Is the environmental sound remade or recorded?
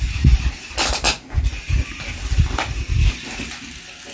recorded